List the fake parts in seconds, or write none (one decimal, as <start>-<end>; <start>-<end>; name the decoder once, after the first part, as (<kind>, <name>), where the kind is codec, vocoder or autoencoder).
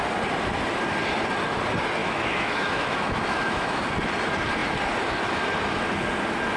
2.0-3.8 (autoencoder, DAC-VAE)